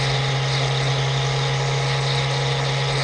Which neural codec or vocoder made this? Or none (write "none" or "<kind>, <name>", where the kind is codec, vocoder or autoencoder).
none